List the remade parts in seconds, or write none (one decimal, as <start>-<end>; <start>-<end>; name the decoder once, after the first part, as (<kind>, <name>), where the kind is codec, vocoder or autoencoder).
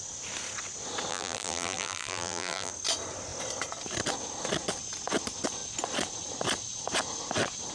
1.1-2.7 (vocoder, BigVGAN v2)